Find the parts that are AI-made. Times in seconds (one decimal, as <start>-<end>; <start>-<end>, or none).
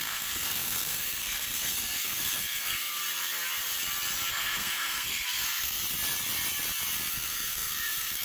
0.0-3.0; 4.3-5.8; 7.1-8.2